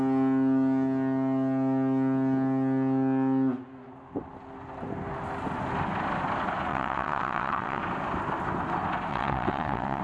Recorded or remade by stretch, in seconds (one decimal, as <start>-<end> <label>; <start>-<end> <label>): 0.0-6.7 recorded; 6.7-7.8 remade; 7.8-9.1 recorded; 9.1-10.0 remade